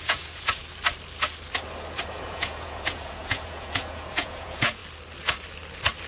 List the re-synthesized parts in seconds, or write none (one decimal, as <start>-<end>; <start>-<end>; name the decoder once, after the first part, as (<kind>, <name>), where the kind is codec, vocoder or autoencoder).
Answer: 0.0-0.6 (vocoder, Vocos); 2.0-4.8